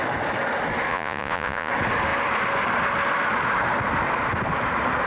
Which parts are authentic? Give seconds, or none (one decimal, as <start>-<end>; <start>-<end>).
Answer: 0.0-0.9; 1.7-5.1